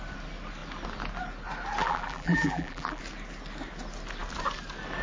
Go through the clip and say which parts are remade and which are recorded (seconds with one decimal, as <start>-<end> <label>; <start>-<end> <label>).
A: 0.0-1.8 recorded; 1.8-3.0 remade; 3.0-5.0 recorded